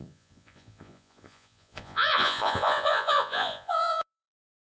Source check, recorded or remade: remade